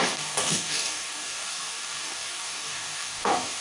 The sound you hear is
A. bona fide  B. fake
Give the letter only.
B